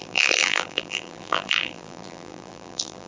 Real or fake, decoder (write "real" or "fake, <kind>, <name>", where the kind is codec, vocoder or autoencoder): fake, vocoder, BigVGAN v2